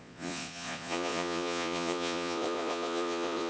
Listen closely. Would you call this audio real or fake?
fake